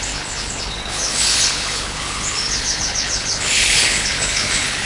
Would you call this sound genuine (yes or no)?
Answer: no